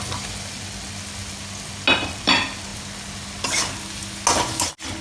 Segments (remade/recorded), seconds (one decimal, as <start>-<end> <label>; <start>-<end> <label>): 0.0-5.0 recorded